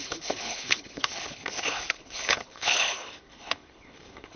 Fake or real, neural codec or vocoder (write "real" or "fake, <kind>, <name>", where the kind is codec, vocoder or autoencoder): fake, codec, HILCodec